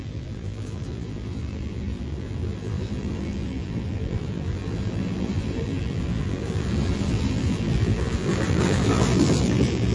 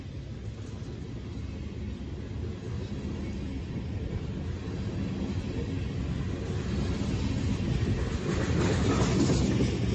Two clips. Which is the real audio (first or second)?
second